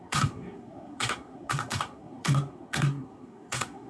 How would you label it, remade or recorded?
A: remade